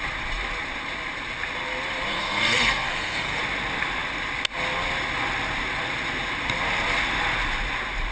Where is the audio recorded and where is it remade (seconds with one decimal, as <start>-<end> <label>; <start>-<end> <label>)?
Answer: 0.0-2.1 recorded; 2.1-3.4 remade; 3.4-8.1 recorded